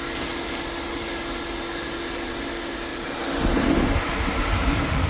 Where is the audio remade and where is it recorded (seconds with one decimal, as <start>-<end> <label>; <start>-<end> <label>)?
0.0-5.1 recorded